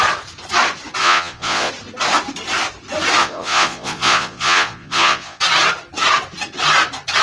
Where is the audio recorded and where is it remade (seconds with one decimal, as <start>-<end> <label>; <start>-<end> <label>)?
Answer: 0.0-1.0 recorded; 1.0-1.7 remade; 1.7-3.2 recorded; 3.2-5.4 remade; 5.4-7.2 recorded